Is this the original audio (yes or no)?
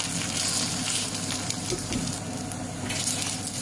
yes